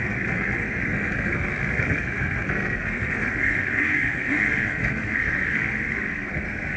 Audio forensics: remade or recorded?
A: remade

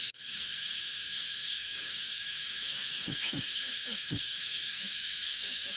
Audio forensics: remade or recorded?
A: remade